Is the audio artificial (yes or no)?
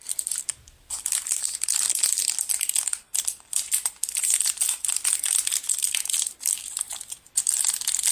no